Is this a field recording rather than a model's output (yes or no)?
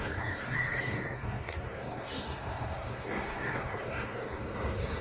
no